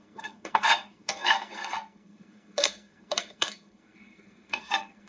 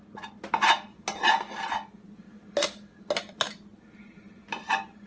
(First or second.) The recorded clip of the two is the second